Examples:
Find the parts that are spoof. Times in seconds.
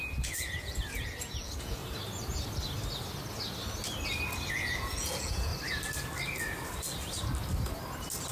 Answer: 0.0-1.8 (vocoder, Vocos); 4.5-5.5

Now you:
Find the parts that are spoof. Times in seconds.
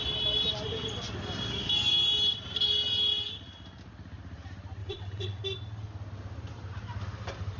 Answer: 4.8-5.4 (vocoder, WaveNeXt)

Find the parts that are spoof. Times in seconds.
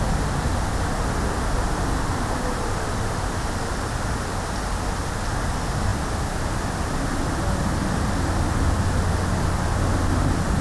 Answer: none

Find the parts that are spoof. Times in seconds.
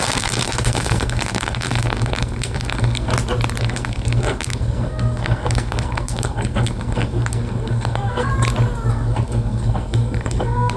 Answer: 0.0-3.1 (codec, SNAC); 3.6-8.3; 8.9-10.8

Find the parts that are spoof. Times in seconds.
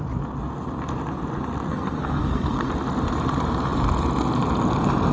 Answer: 1.7-2.7 (codec, SNAC)